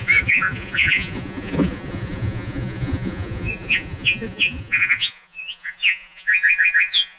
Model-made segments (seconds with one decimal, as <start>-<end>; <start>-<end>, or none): 0.0-7.2